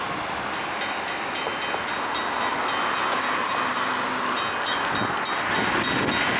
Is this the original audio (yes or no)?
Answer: yes